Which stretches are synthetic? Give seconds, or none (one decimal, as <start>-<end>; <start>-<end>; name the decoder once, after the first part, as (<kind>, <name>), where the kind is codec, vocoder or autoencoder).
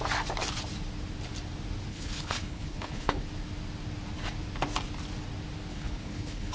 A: 1.9-3.2 (codec, HILCodec); 5.7-6.5